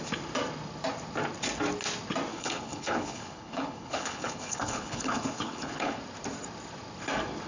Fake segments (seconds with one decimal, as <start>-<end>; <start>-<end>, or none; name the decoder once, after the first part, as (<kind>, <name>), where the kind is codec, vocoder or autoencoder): 2.3-6.0 (codec, HILCodec)